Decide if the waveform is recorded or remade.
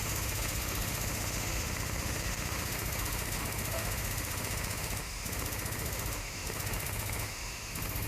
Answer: remade